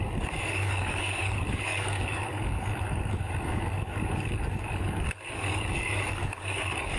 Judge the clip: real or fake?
fake